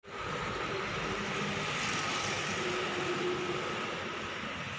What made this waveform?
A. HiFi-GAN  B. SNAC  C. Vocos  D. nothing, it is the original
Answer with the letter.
D